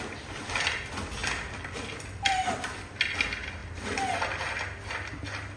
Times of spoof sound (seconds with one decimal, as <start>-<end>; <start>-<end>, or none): 1.2-2.7; 3.6-4.5